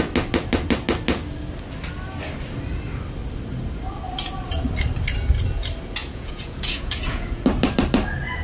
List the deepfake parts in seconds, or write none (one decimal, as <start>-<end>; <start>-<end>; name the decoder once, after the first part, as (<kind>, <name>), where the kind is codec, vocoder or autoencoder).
6.0-7.4 (vocoder, Vocos)